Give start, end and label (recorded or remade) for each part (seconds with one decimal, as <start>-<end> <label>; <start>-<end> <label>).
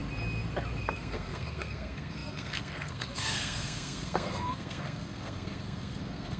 0.0-0.8 recorded; 0.8-6.4 remade